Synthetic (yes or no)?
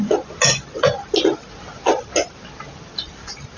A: no